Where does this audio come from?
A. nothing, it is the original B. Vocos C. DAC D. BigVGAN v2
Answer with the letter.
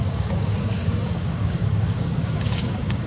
C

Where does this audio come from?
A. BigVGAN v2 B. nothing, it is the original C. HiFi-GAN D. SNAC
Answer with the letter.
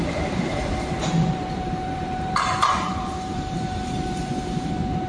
A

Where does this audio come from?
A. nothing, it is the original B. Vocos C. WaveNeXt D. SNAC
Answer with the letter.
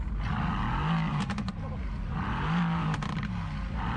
A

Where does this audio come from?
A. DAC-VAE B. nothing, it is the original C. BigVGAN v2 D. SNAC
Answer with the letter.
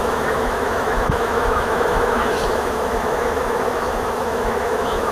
A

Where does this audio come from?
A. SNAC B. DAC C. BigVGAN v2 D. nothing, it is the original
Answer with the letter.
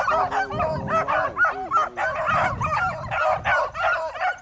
D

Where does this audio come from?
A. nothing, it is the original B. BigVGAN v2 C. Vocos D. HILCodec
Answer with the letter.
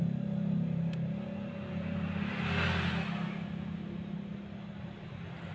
A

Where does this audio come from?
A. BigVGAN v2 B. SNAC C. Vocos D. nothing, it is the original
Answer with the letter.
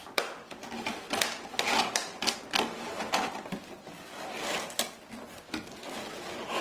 D